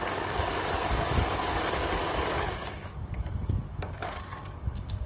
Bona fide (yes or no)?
no